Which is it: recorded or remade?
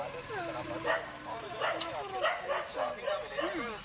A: recorded